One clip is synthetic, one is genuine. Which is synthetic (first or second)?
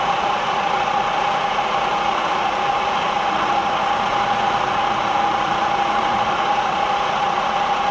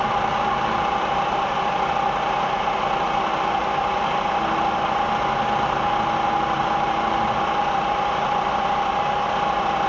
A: first